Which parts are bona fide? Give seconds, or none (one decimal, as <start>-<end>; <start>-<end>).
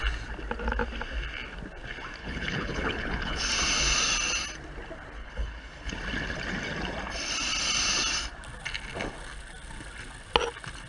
0.0-2.2; 3.4-5.2; 5.9-10.9